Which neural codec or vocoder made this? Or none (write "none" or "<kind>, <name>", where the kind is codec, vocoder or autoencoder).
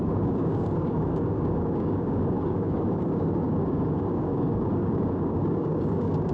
codec, DAC